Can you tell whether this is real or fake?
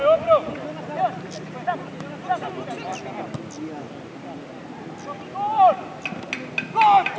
real